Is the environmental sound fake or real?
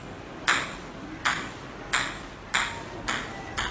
real